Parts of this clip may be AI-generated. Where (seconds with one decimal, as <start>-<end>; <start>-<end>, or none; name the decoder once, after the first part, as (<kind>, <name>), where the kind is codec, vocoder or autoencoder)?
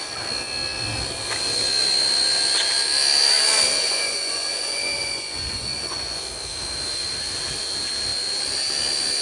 3.8-6.2 (vocoder, Vocos)